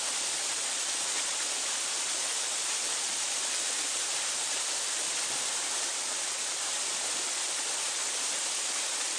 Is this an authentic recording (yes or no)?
no